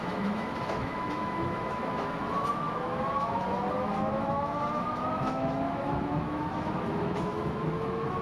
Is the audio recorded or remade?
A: remade